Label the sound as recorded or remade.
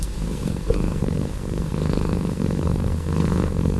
remade